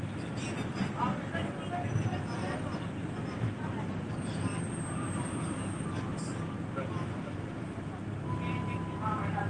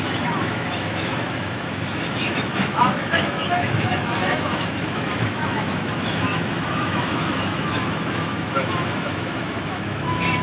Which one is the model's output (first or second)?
second